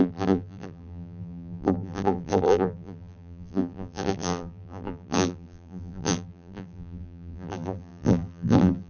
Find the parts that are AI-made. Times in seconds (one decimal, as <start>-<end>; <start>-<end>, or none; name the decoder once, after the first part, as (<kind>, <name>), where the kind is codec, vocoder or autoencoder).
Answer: 0.0-8.9 (vocoder, BigVGAN v2)